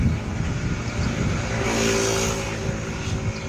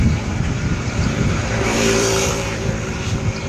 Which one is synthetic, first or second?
second